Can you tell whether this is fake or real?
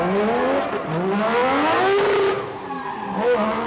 real